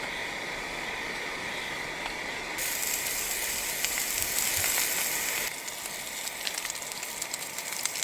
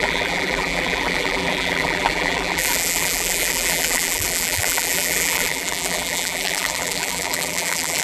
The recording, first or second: first